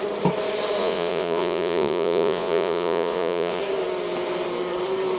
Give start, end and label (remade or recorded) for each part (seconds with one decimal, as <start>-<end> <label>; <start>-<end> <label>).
0.0-0.8 recorded; 0.8-3.6 remade; 3.6-5.2 recorded